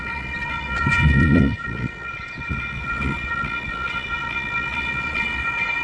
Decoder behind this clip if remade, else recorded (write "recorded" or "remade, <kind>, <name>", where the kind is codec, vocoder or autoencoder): remade, vocoder, Vocos